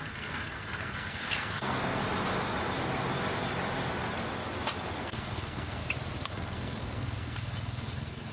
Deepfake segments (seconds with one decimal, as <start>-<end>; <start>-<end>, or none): 0.0-2.0; 5.0-5.8; 6.3-8.3